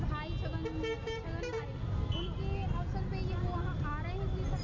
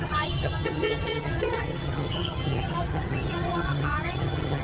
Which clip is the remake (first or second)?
second